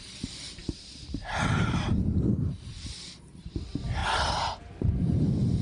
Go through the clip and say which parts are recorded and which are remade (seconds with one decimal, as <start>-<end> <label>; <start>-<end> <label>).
0.0-4.0 remade; 4.0-4.6 recorded; 4.6-5.6 remade